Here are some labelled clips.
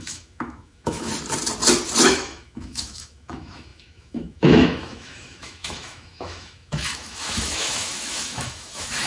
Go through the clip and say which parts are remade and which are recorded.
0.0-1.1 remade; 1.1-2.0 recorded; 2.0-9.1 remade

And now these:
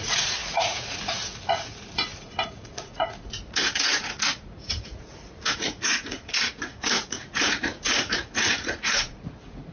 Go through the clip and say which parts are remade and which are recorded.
0.0-9.7 remade

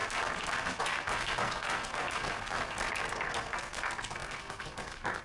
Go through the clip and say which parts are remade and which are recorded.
0.0-5.2 remade

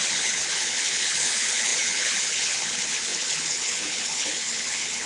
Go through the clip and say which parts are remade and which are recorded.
0.0-5.1 remade

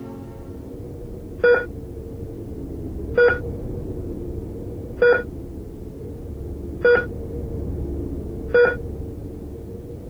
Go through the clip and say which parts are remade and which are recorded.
0.0-10.1 recorded

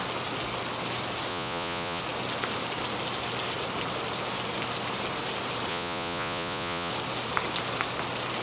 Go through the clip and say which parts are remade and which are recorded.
0.0-1.3 recorded; 1.3-2.0 remade; 2.0-5.7 recorded; 5.7-6.9 remade; 6.9-8.4 recorded

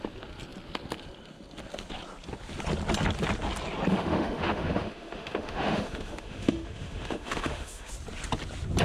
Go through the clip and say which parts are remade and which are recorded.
0.0-3.9 recorded; 3.9-7.9 remade; 7.9-8.8 recorded

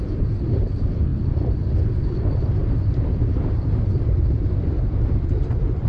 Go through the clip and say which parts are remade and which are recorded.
0.0-1.1 remade; 1.1-1.9 recorded; 1.9-5.9 remade